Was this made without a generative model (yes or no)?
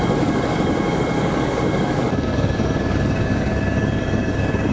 no